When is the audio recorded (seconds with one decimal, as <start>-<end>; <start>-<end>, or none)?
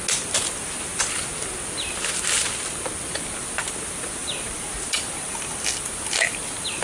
0.0-4.2; 4.9-6.8